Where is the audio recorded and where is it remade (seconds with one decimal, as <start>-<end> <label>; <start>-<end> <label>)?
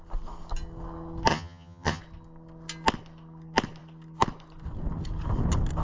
0.0-1.3 recorded; 1.3-2.0 remade; 2.0-5.8 recorded